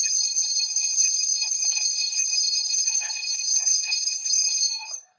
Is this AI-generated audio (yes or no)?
yes